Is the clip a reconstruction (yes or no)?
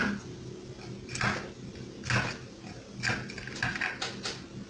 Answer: no